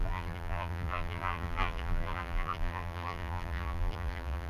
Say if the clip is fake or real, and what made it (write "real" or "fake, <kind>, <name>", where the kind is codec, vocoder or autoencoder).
fake, vocoder, BigVGAN v2